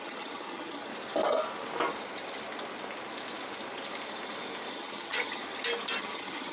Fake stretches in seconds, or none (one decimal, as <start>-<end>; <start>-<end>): 0.0-0.9; 4.7-5.4; 6.0-6.5